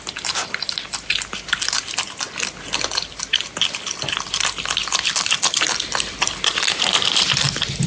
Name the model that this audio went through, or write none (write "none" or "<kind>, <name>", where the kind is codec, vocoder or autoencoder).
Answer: none